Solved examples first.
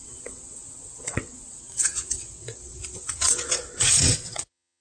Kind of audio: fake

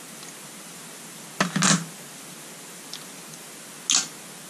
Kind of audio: real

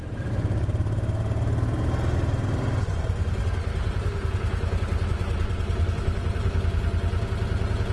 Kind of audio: real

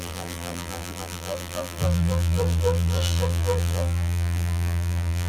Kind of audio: fake